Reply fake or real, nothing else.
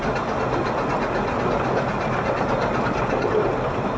fake